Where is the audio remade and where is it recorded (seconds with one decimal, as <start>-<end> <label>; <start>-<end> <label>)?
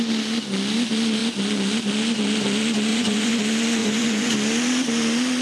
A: 0.0-2.9 recorded; 2.9-3.4 remade; 3.4-3.8 recorded; 3.8-4.3 remade; 4.3-5.4 recorded